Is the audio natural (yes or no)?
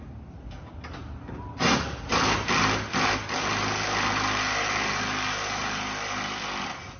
yes